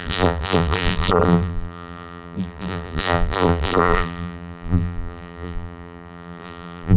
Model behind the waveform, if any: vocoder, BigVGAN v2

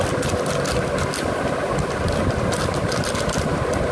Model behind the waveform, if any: none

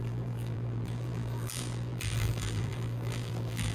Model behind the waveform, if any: vocoder, BigVGAN v2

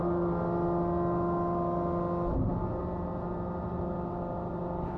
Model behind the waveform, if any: none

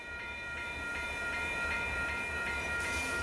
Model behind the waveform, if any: vocoder, BigVGAN v2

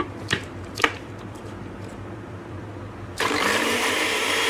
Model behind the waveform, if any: vocoder, BigVGAN v2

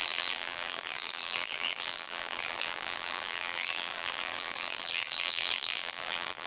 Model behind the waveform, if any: vocoder, BigVGAN v2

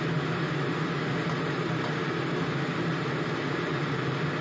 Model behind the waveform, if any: none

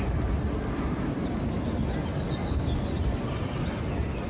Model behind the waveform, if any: none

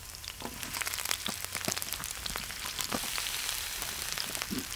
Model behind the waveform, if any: vocoder, BigVGAN v2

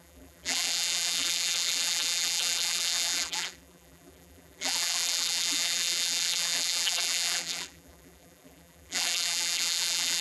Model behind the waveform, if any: vocoder, BigVGAN v2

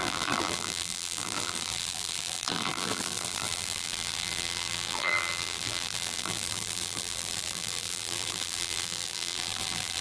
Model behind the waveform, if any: vocoder, BigVGAN v2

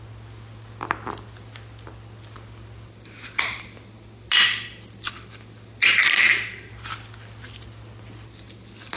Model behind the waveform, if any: none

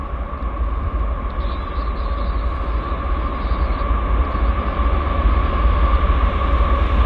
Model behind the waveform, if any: none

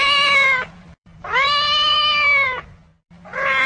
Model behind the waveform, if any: vocoder, BigVGAN v2